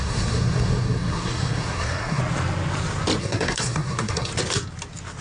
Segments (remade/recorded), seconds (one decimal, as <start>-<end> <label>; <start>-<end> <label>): 0.0-2.2 remade; 2.2-3.2 recorded; 3.2-4.3 remade; 4.3-5.2 recorded